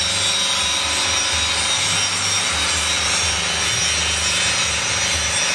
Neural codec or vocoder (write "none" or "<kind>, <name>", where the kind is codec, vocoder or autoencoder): none